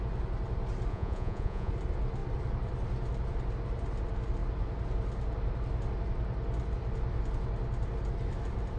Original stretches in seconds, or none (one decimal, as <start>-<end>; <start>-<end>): 0.0-0.9; 1.7-8.8